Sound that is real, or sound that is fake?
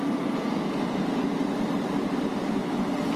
real